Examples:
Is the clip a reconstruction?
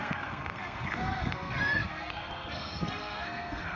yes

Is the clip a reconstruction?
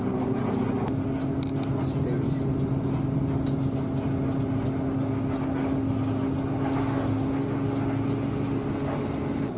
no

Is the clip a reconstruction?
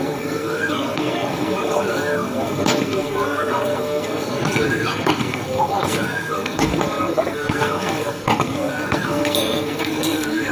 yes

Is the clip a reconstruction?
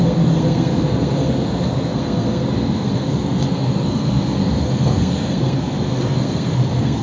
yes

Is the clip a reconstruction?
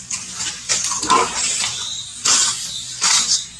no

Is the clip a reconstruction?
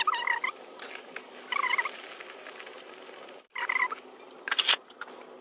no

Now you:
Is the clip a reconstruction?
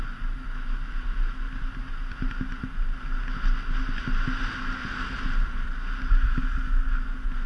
no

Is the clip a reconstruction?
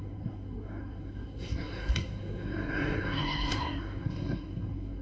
yes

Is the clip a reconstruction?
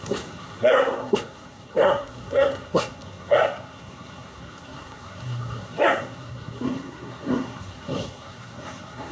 yes